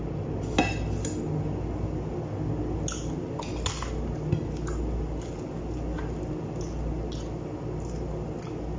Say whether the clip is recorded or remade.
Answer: recorded